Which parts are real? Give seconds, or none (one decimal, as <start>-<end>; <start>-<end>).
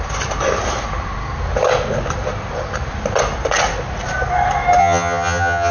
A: 0.0-4.8